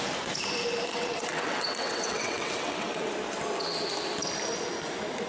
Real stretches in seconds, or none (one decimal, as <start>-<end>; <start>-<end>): 0.0-0.9; 3.1-5.3